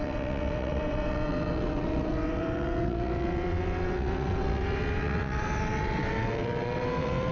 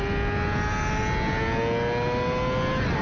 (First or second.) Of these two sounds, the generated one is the first